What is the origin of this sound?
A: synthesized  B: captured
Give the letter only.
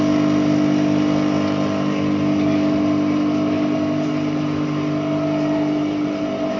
B